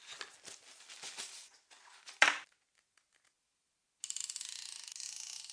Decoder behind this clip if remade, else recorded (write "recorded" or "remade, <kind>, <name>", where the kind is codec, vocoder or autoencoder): recorded